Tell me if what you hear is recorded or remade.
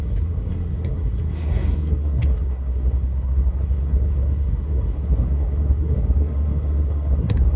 remade